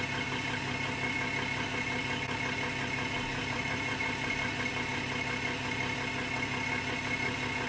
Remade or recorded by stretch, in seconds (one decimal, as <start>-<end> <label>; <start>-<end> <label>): 0.0-3.3 recorded; 3.3-4.7 remade; 4.7-7.7 recorded